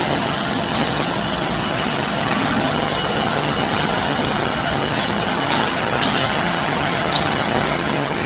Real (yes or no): no